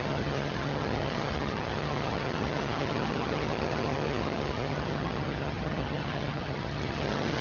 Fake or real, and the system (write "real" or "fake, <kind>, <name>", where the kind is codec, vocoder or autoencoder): fake, vocoder, HiFi-GAN